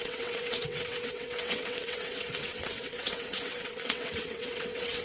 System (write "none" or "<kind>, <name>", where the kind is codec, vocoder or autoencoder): vocoder, WaveNeXt